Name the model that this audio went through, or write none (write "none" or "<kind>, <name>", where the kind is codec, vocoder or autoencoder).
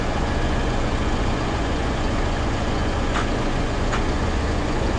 vocoder, Vocos